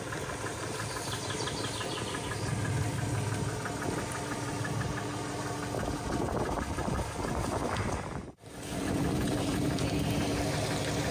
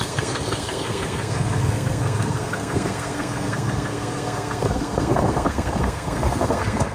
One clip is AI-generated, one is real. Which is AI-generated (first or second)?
second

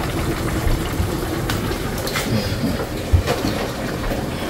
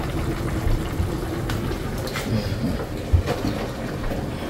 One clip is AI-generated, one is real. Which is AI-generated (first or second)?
first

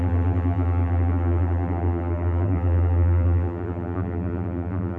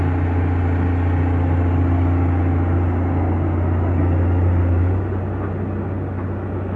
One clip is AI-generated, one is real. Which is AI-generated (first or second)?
first